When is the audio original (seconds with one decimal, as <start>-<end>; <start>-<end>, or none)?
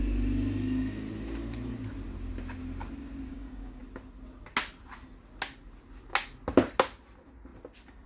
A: 0.0-3.3; 3.8-8.1